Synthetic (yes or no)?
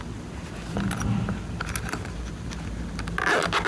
no